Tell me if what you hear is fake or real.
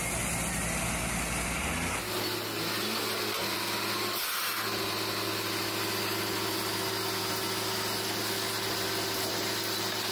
real